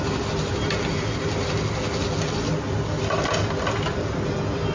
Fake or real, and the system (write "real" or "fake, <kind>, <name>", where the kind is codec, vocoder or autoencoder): real